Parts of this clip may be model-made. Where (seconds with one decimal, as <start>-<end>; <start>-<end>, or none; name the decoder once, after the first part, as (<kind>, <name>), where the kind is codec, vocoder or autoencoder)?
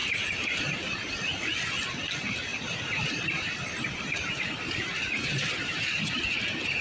0.0-1.1 (vocoder, BigVGAN v2); 2.5-6.8